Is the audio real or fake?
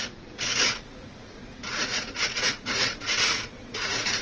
fake